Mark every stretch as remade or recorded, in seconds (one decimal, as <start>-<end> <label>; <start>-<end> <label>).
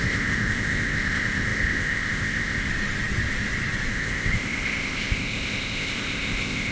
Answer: 0.0-2.7 remade; 2.7-3.9 recorded; 3.9-6.7 remade